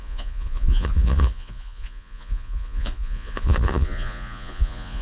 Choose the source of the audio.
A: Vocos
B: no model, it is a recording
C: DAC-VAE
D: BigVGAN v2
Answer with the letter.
A